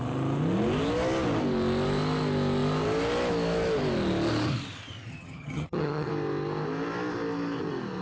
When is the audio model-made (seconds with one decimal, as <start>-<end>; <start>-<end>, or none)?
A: 5.1-6.1